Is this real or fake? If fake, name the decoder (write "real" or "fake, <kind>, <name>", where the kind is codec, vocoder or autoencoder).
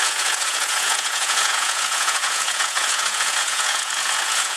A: fake, vocoder, Vocos